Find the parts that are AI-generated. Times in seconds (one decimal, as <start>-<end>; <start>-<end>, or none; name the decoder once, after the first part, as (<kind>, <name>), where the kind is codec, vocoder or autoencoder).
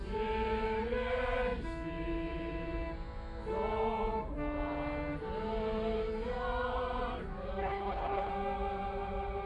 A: 7.6-8.3 (codec, HILCodec)